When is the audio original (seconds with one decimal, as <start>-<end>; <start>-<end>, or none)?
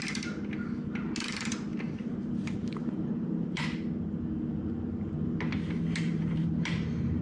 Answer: 0.0-1.7; 3.6-6.1